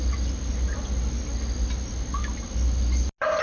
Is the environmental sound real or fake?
real